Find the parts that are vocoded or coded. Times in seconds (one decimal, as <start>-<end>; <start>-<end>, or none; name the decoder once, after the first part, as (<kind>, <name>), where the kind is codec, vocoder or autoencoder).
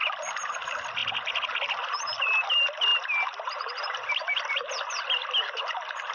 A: none